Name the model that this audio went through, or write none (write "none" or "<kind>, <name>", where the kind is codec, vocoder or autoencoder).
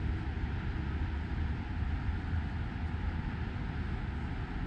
none